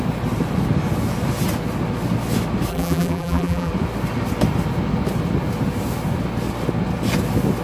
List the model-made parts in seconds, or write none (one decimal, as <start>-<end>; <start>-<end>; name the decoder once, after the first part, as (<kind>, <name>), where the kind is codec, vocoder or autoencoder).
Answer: 2.7-3.7 (vocoder, BigVGAN v2)